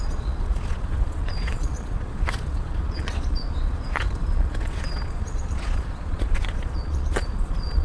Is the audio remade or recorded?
remade